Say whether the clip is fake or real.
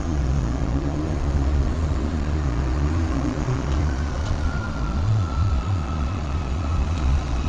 fake